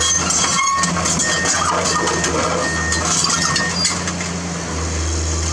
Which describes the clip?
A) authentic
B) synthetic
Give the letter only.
A